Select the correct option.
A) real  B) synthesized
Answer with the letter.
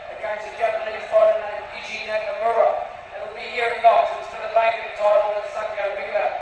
B